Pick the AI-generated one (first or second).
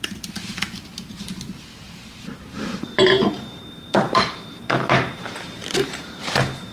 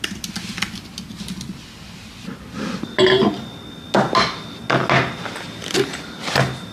first